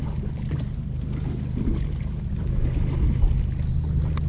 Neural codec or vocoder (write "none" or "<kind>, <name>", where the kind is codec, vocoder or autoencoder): none